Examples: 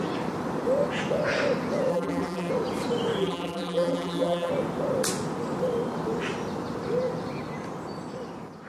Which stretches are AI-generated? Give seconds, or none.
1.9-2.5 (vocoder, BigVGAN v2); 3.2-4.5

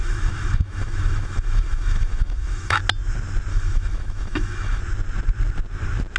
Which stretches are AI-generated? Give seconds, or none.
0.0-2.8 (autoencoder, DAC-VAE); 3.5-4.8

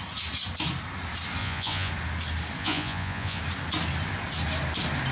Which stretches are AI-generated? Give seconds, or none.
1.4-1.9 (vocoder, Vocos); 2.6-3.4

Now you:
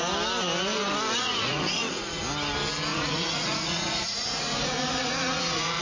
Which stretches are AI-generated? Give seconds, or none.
1.2-2.2 (vocoder, Vocos); 2.9-5.8

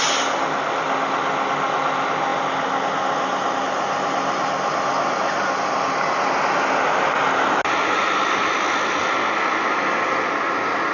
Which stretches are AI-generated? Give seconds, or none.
none

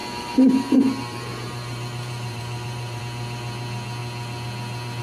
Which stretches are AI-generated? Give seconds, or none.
0.0-3.0 (vocoder, BigVGAN v2)

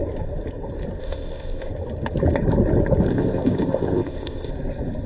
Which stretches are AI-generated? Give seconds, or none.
1.0-1.7 (codec, ZipCodec); 3.1-4.5

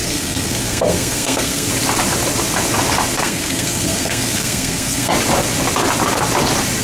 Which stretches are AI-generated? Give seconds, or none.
0.0-1.7 (codec, SNAC); 3.2-5.1